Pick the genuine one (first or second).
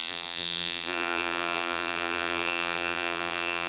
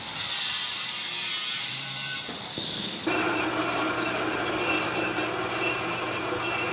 second